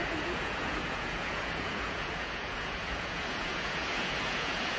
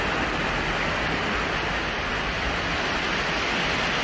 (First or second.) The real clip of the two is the second